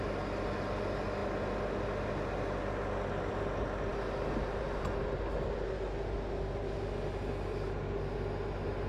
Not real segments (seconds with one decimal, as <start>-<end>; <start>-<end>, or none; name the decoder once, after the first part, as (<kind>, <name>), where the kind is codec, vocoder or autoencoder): none